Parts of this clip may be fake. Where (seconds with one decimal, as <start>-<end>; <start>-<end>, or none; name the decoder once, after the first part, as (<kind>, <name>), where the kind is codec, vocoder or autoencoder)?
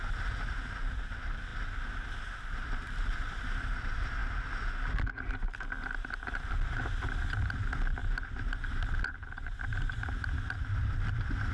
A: none